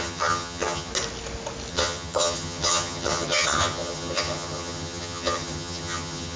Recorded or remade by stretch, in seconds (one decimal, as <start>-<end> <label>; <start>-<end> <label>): 0.0-0.9 remade; 0.9-1.7 recorded; 1.7-6.4 remade